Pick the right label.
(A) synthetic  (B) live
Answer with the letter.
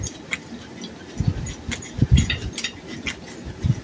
B